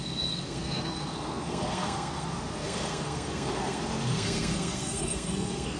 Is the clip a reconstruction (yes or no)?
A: yes